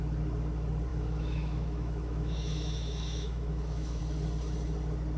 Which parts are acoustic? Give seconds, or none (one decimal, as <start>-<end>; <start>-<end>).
0.0-0.9; 4.0-5.2